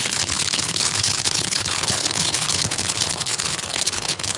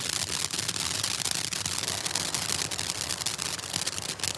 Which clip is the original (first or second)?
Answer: second